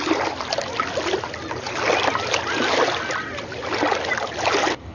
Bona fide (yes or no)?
yes